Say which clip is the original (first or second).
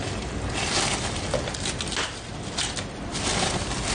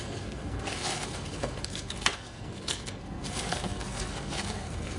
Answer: first